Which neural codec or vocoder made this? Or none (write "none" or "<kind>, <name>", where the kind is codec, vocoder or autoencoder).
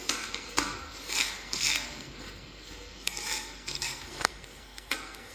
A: codec, SNAC